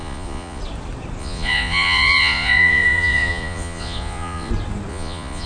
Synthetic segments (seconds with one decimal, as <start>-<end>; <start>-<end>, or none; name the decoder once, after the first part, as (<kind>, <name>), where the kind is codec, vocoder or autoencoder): 0.0-0.6 (vocoder, Vocos); 1.2-4.5; 4.9-5.5